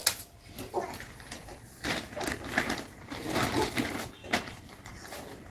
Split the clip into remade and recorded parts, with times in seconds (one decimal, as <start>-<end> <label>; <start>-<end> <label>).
0.0-3.3 remade; 3.3-4.2 recorded; 4.2-5.5 remade